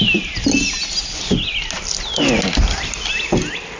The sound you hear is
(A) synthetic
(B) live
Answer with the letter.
B